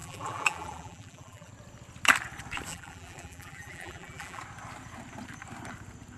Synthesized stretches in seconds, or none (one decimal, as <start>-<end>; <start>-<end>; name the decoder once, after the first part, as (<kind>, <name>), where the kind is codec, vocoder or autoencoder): 0.0-1.5 (vocoder, BigVGAN v2); 2.7-4.4